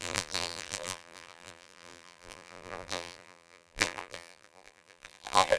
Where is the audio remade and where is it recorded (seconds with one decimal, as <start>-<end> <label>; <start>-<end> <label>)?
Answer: 0.0-5.6 remade